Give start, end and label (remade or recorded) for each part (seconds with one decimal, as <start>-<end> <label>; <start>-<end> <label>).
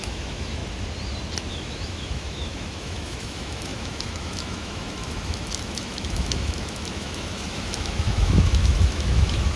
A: 0.0-0.6 remade; 0.6-1.5 recorded; 1.5-9.6 remade